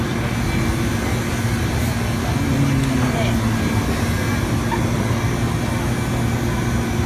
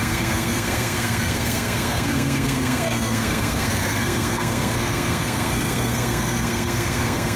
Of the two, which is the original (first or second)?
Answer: first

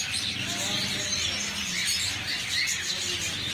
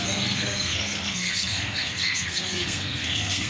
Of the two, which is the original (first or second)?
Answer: first